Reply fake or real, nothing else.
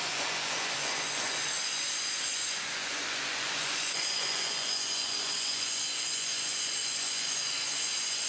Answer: fake